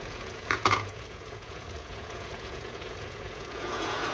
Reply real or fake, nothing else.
fake